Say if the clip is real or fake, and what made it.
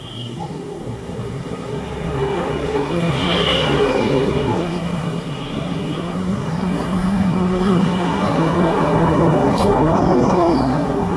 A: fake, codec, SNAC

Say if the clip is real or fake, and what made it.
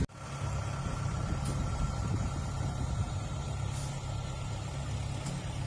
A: real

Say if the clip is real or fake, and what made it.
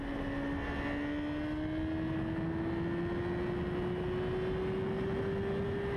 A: real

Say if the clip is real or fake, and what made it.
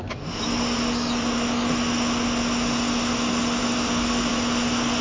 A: real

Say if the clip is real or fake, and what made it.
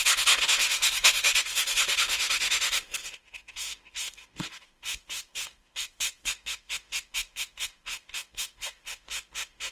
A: fake, autoencoder, DAC-VAE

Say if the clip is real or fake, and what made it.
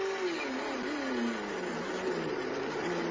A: real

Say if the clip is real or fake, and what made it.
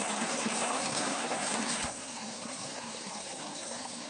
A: fake, codec, SNAC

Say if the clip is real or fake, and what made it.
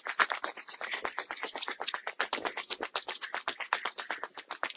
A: real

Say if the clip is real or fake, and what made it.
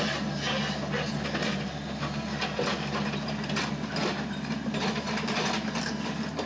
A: real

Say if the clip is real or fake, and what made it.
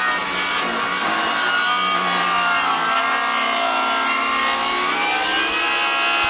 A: real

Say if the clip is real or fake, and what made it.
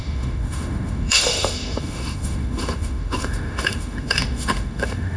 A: fake, autoencoder, DAC-VAE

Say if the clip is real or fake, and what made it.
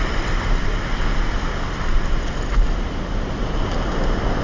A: real